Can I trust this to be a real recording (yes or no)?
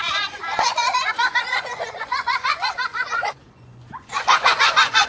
no